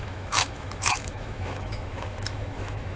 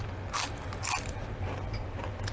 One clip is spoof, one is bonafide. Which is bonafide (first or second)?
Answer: second